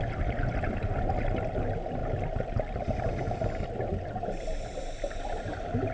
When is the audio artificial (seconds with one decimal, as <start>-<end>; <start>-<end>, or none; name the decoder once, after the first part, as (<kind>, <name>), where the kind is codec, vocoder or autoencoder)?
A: none